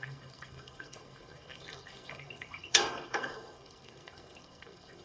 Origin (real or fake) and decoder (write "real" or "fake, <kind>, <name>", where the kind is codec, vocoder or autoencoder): fake, codec, SNAC